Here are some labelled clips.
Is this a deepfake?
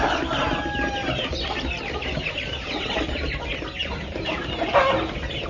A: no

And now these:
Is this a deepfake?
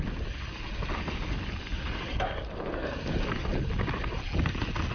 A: no